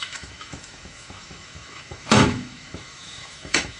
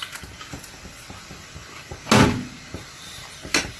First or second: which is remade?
first